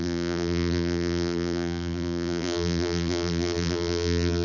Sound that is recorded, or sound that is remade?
remade